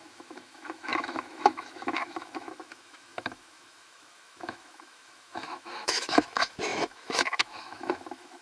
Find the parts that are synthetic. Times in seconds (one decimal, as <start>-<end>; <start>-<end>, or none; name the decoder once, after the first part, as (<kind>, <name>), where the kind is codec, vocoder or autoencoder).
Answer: 0.0-8.4 (autoencoder, DAC-VAE)